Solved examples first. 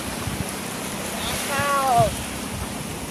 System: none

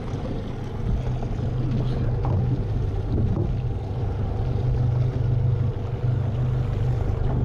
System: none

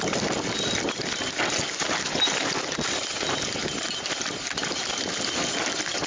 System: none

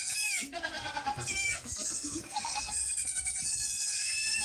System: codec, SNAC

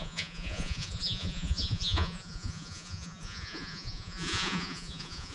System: vocoder, Vocos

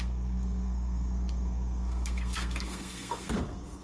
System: codec, SNAC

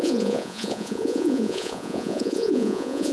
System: vocoder, Vocos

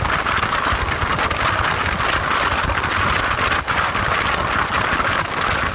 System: none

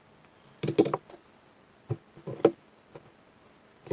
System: none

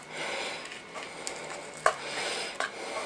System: none